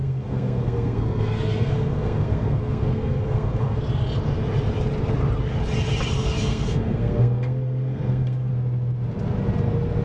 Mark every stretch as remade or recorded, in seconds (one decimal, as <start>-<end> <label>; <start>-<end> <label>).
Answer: 0.0-3.8 remade; 3.8-6.2 recorded; 6.2-8.5 remade; 8.5-10.0 recorded